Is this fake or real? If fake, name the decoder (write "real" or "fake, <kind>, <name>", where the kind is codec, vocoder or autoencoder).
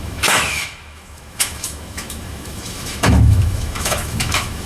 fake, autoencoder, DAC-VAE